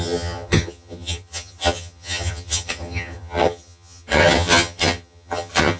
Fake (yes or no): yes